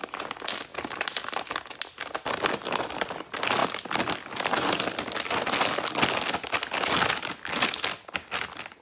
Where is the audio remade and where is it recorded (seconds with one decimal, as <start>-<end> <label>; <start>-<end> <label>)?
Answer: 0.0-8.8 recorded